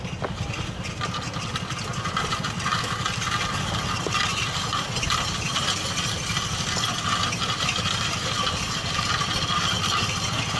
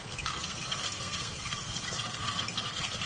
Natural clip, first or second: first